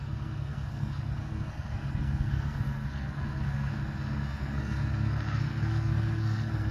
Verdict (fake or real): fake